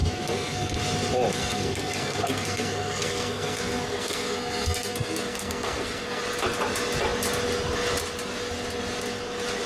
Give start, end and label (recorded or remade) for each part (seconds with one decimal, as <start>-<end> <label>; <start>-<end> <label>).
0.0-0.8 remade; 0.8-1.3 recorded; 1.3-6.2 remade; 6.2-9.7 recorded